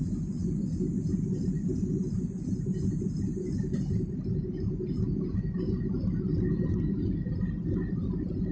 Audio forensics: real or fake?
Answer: real